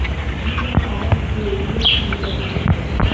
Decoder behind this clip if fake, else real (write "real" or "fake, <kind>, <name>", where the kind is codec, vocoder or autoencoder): fake, vocoder, BigVGAN v2